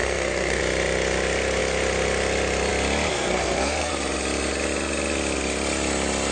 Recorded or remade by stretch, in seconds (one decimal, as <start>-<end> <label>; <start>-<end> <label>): 0.0-0.6 remade; 0.6-3.1 recorded; 3.1-3.9 remade; 3.9-6.3 recorded